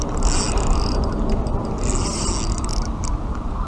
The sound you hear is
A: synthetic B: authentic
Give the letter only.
B